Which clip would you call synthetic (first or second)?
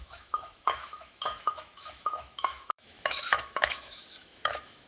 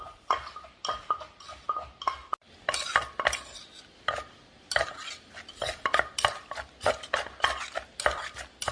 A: first